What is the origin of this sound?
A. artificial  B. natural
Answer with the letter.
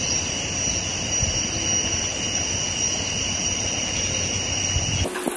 B